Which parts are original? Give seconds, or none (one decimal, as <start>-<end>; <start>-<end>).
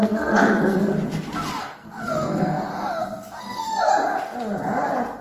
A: 0.9-1.6; 2.7-3.4; 3.9-5.2